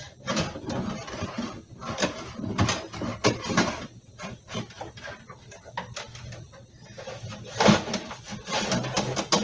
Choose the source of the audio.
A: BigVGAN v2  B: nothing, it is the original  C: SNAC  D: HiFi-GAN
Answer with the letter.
B